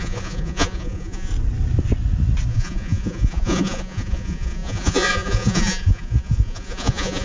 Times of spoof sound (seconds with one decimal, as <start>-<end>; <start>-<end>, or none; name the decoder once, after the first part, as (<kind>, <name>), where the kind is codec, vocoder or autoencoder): 0.0-1.3 (vocoder, Vocos); 2.5-7.2